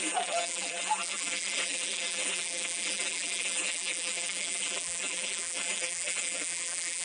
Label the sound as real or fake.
fake